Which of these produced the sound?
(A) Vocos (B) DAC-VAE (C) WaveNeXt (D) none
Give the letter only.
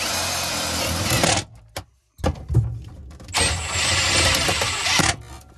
D